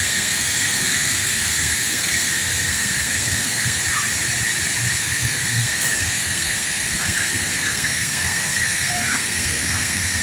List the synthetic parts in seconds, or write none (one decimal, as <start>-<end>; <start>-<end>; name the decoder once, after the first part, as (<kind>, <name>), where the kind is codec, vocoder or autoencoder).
0.0-3.8 (codec, SNAC); 4.9-10.2